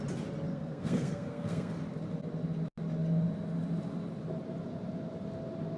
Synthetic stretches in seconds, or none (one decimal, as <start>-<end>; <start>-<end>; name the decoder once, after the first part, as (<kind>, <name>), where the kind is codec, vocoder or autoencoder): 0.5-1.8 (codec, SNAC)